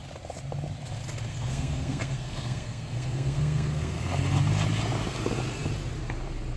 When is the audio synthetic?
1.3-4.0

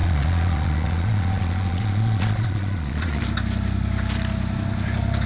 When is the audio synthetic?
0.0-3.2

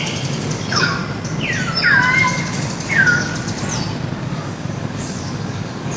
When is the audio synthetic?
0.0-1.0; 2.2-3.3; 4.2-6.0